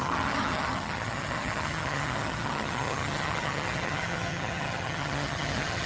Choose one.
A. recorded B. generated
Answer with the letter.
B